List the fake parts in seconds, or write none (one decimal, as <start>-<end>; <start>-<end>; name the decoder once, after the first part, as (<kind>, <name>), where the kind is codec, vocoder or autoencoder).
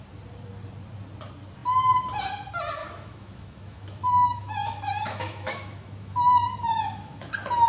2.8-7.3 (autoencoder, DAC-VAE)